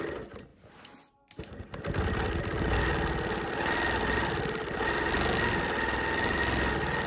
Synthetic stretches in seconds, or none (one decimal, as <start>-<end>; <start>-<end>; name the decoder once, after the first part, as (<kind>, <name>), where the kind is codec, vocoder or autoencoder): none